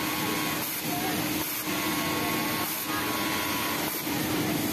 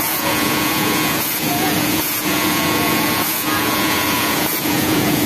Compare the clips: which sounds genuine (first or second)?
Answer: first